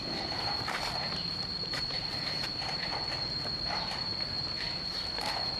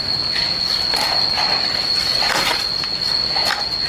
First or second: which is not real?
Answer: first